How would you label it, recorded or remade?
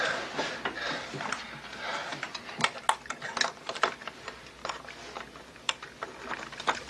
recorded